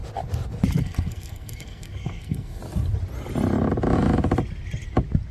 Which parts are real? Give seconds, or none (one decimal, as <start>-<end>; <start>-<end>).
0.0-0.8; 2.6-5.3